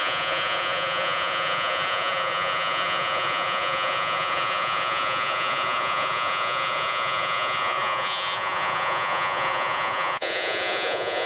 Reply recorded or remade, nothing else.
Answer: remade